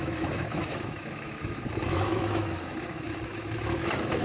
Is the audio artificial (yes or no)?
yes